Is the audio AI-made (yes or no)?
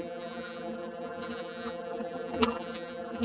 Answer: yes